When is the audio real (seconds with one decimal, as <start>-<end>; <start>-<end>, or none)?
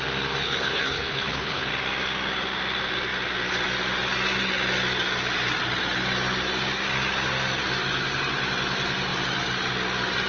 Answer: 0.0-0.4; 1.7-10.3